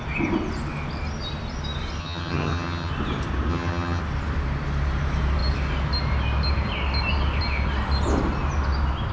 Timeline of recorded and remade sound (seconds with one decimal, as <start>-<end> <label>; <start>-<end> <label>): 0.0-2.0 recorded; 2.0-2.9 remade; 2.9-3.5 recorded; 3.5-4.0 remade; 4.0-9.1 recorded